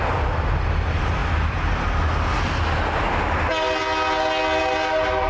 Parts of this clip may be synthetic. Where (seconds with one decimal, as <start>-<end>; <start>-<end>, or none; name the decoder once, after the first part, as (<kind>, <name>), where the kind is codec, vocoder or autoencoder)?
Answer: 0.0-1.2 (vocoder, BigVGAN v2); 3.2-3.8; 4.6-5.3